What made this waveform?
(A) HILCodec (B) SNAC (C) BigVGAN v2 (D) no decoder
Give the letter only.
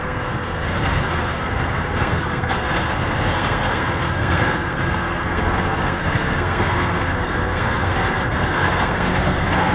B